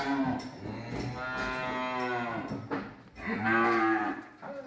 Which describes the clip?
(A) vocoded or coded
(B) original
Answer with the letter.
B